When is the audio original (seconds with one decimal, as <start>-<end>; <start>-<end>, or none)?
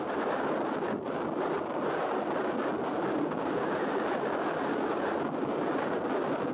0.0-6.5